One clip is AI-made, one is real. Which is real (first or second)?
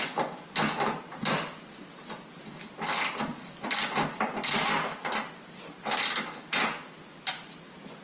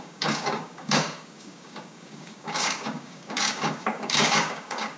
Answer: first